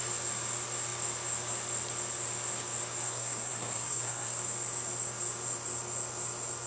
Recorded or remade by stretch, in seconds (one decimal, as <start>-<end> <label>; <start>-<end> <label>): 0.0-3.0 recorded; 3.0-4.4 remade; 4.4-6.7 recorded